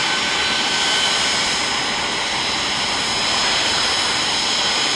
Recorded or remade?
recorded